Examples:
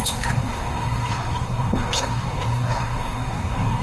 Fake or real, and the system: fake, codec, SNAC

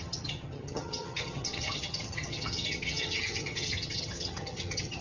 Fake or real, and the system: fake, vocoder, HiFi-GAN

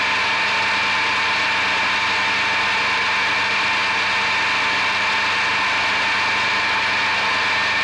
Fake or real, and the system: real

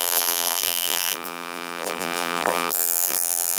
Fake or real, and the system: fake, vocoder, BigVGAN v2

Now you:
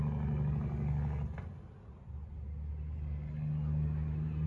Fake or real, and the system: real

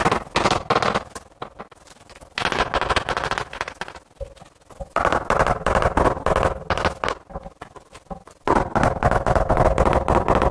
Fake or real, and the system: real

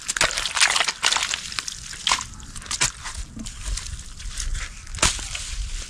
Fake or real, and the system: real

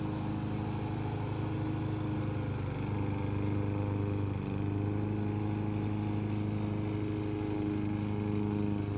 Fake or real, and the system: real